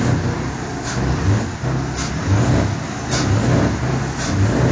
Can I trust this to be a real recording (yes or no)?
yes